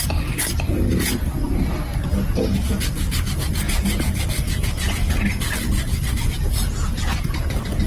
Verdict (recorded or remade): recorded